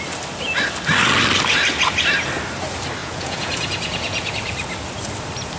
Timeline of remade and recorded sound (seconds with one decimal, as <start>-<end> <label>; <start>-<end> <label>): 0.0-3.0 recorded; 3.0-4.3 remade; 4.3-5.6 recorded